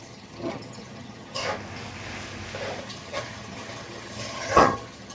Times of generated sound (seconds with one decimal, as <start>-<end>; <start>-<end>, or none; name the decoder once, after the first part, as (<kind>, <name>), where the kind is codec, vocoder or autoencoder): 0.0-1.4 (vocoder, HiFi-GAN); 2.8-5.1